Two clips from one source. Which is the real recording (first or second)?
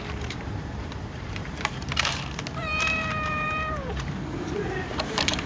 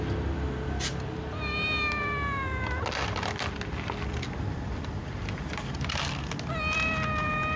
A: second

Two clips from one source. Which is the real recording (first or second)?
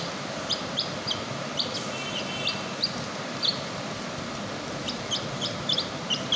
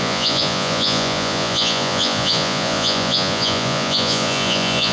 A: first